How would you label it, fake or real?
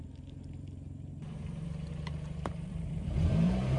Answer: fake